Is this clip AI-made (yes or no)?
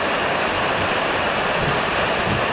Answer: yes